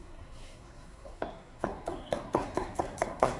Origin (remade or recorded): remade